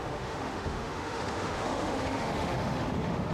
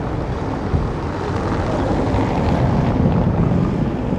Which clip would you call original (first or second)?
second